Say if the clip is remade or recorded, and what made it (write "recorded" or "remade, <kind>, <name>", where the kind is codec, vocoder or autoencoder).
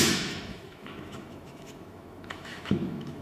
remade, autoencoder, DAC-VAE